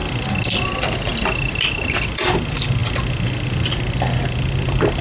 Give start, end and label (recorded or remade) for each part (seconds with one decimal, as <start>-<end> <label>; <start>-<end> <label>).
0.0-1.6 recorded; 1.6-2.8 remade; 2.8-4.2 recorded; 4.2-5.0 remade